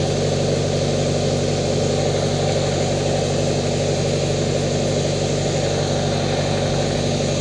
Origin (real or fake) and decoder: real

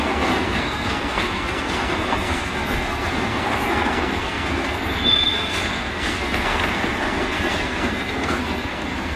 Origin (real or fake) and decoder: fake, codec, SNAC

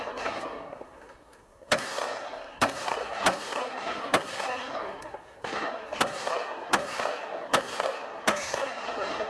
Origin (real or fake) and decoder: fake, codec, SNAC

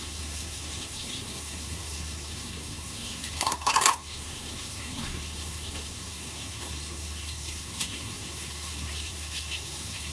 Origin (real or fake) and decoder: fake, codec, SNAC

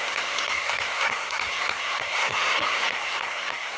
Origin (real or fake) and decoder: fake, codec, SNAC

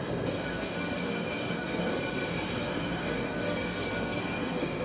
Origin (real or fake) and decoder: fake, codec, SNAC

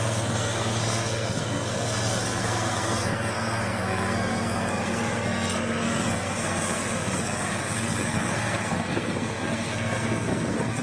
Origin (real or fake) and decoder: fake, codec, SNAC